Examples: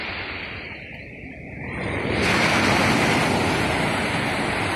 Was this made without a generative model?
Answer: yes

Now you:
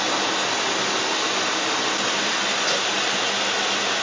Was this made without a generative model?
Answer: yes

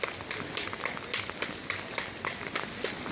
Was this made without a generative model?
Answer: yes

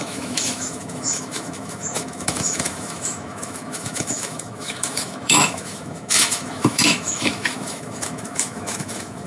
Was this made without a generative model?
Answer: no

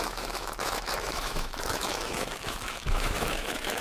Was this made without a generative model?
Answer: no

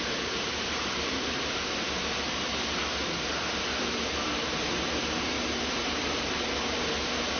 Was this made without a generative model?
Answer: no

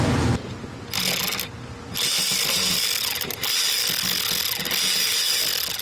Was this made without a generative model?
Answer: yes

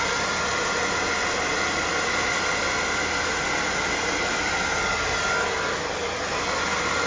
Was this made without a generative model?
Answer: yes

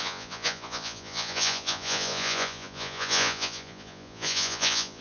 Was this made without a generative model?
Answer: no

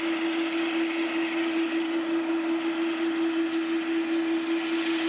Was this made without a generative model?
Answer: yes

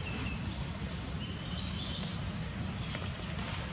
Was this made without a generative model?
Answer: yes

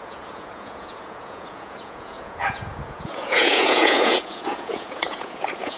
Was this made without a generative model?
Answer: no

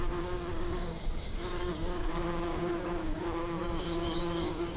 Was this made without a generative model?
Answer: no